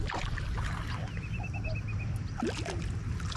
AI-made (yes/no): no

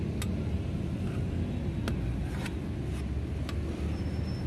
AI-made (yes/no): no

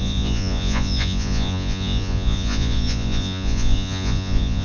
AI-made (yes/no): yes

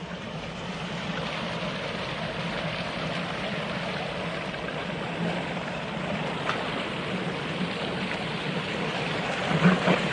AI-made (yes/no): yes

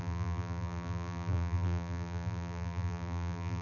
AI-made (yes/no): yes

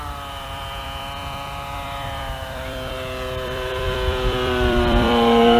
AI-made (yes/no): yes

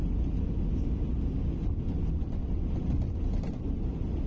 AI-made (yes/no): no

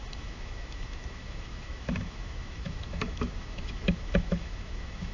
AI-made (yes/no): yes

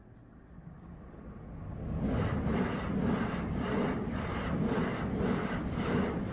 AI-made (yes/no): no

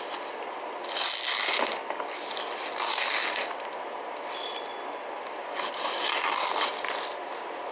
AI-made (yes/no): no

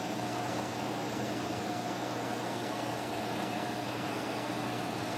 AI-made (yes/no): yes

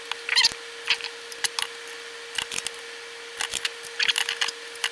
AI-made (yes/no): no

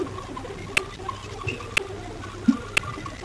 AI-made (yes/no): no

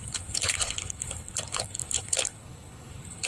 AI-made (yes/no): yes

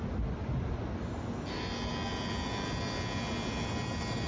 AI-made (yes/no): no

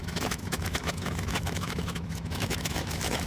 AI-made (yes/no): yes